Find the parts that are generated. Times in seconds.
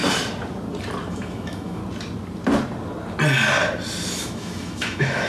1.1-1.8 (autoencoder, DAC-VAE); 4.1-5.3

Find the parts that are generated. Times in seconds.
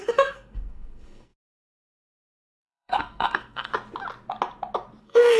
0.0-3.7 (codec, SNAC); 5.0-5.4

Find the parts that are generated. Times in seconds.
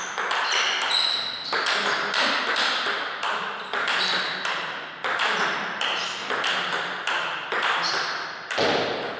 none